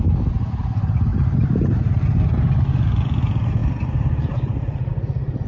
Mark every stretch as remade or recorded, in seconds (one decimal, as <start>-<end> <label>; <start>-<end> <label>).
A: 0.0-1.1 recorded; 1.1-1.9 remade; 1.9-5.5 recorded